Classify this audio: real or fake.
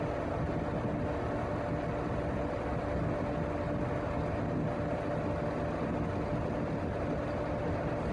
real